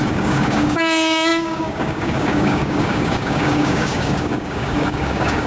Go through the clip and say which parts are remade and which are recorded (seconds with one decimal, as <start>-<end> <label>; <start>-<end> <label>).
0.0-5.5 remade